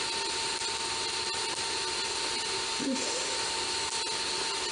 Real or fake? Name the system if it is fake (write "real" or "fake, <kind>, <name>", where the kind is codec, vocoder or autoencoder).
real